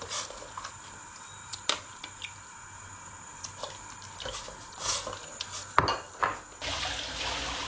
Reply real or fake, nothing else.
real